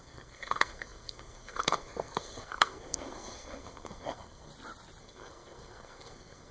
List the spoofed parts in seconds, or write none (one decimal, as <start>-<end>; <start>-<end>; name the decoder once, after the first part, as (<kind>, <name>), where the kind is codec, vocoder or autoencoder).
0.0-4.5 (codec, SNAC); 5.0-6.5